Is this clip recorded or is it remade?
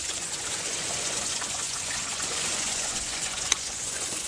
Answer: remade